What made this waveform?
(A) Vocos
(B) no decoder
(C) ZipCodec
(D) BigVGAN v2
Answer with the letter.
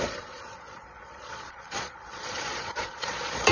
A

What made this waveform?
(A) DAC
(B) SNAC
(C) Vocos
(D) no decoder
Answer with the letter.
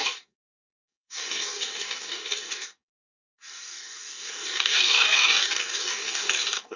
A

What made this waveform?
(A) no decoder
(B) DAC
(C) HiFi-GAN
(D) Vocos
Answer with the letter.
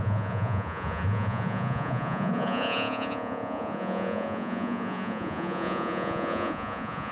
D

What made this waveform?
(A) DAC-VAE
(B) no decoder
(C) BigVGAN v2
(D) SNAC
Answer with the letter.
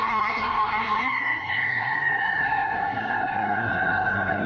D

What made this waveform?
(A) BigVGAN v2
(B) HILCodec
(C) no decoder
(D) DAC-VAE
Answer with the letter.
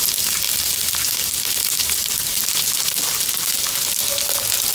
C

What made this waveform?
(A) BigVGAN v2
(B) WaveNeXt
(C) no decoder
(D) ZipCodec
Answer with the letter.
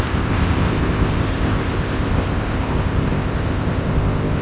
D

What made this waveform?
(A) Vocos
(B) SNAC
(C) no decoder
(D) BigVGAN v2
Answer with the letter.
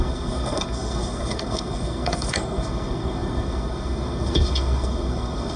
B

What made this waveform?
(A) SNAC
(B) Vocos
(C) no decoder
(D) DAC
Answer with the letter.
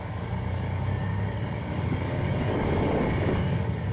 D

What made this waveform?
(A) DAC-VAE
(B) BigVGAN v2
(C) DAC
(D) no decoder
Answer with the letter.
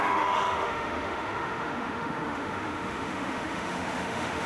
A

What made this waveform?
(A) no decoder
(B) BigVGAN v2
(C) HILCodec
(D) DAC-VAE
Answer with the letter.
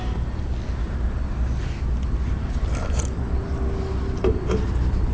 A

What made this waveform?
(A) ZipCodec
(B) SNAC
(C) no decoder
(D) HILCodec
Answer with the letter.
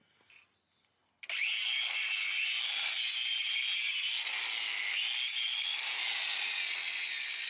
C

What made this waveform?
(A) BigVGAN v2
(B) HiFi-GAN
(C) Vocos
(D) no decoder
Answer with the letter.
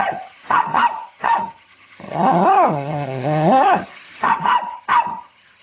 B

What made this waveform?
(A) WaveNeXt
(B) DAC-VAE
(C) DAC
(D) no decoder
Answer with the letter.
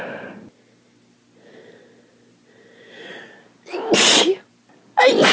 D